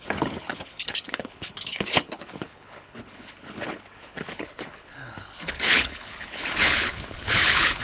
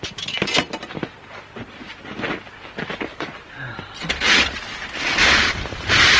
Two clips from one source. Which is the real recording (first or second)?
second